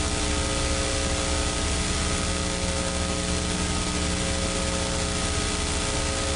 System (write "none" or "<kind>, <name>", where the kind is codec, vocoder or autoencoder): none